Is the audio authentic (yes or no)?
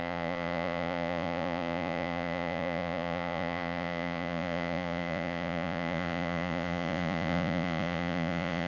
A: no